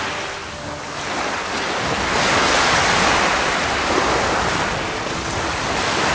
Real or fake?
real